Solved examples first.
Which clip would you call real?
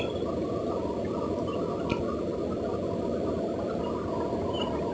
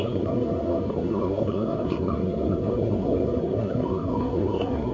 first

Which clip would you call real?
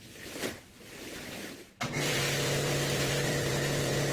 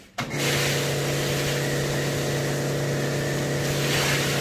second